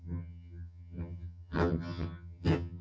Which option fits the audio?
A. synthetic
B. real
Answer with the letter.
A